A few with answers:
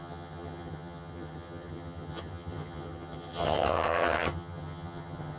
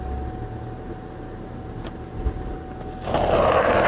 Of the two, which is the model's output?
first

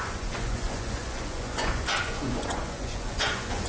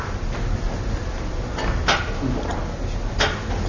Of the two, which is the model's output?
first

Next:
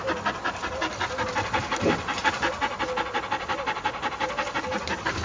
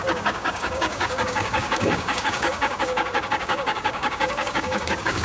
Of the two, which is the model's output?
second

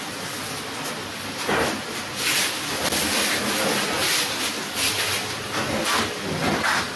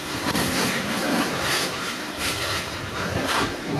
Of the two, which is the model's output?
second